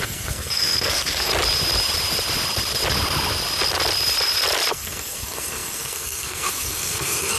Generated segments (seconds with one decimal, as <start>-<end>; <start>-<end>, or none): 0.0-1.3; 4.7-7.4